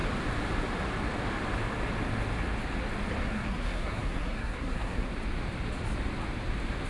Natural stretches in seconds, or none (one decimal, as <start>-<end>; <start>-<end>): 0.0-3.2; 5.1-6.9